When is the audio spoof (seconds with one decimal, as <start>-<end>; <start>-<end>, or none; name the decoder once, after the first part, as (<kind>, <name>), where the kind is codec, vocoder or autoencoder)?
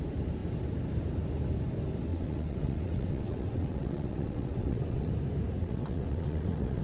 2.1-5.1 (vocoder, WaveNeXt); 5.6-6.8